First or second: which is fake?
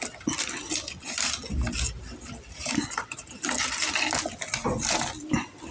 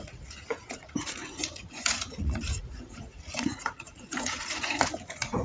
second